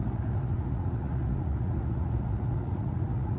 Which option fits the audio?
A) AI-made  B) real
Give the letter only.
A